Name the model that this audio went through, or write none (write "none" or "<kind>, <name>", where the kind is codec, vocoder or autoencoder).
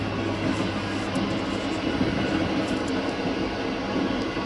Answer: none